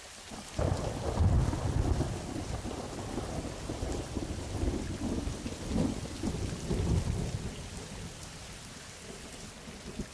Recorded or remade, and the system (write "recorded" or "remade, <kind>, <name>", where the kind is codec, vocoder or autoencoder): recorded